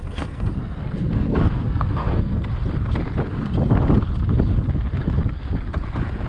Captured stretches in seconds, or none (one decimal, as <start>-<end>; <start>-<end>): 2.5-6.3